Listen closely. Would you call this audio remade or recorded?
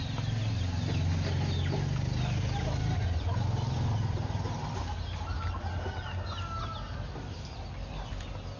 recorded